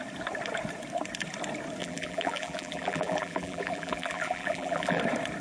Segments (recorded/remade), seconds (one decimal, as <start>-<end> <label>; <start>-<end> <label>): 0.0-1.8 recorded; 1.8-5.0 remade; 5.0-5.4 recorded